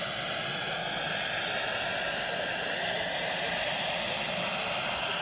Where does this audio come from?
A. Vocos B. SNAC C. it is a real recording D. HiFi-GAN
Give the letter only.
C